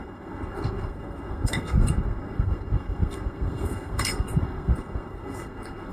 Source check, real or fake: fake